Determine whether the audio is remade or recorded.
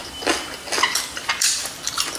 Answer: recorded